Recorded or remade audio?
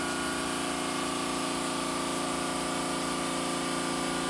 recorded